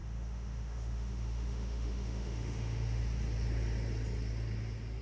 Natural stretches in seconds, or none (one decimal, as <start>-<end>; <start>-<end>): 3.0-5.0